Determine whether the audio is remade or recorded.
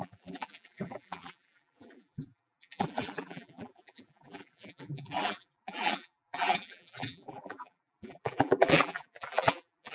remade